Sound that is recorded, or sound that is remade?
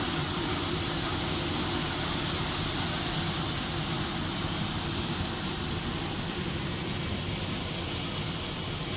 recorded